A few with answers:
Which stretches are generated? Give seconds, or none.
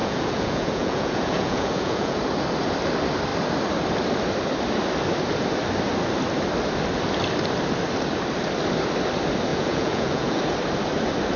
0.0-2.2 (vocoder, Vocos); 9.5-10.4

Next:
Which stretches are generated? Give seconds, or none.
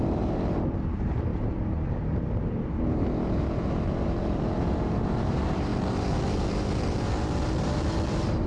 0.0-5.7 (vocoder, BigVGAN v2); 8.1-8.5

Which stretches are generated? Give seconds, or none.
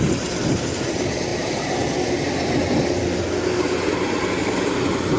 none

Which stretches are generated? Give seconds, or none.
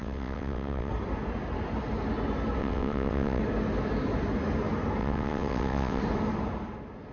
0.0-0.9 (vocoder, WaveNeXt); 2.6-3.4; 5.0-6.0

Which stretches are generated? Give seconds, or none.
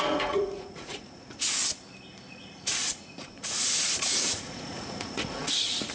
0.0-1.6 (vocoder, Vocos); 2.3-5.9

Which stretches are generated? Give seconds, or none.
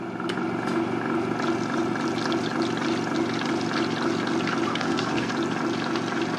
4.7-5.3 (codec, SNAC)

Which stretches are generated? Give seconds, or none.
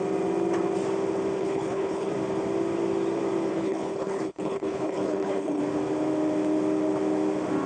1.4-2.1 (codec, HILCodec); 3.5-5.6